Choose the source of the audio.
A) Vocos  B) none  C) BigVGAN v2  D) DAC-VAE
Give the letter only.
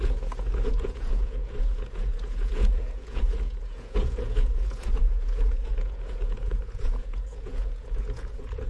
A